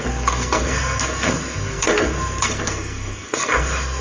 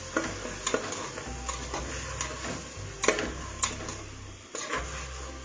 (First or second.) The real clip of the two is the second